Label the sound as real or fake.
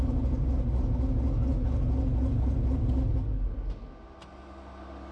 real